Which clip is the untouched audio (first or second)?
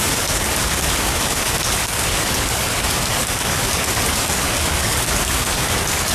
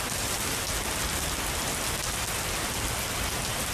second